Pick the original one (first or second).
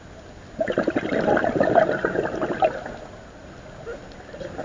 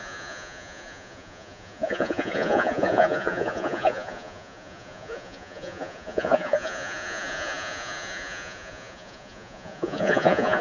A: first